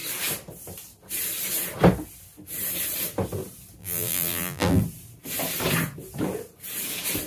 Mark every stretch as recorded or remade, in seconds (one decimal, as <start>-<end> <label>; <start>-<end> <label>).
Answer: 0.0-3.8 recorded; 3.8-4.8 remade; 4.8-7.3 recorded